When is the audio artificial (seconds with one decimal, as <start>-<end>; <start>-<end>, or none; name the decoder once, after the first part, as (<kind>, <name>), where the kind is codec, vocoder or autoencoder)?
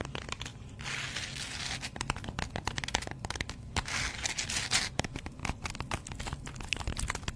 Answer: none